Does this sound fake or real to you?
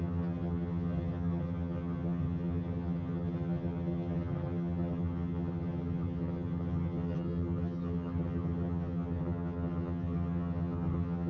fake